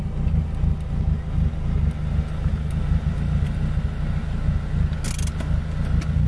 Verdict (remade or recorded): recorded